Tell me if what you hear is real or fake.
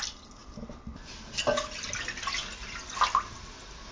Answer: real